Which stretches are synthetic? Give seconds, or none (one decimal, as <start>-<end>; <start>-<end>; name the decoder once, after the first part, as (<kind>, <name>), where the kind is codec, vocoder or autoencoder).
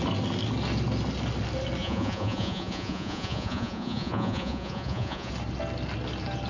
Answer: 1.8-5.3 (vocoder, Vocos)